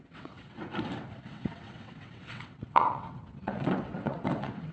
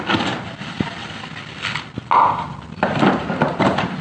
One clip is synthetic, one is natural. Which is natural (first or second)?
second